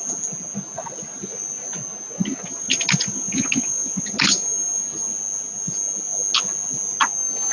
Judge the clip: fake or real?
real